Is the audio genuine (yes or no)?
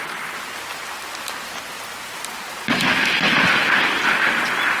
yes